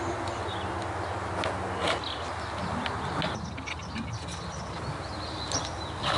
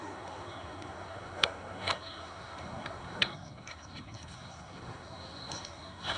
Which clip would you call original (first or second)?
first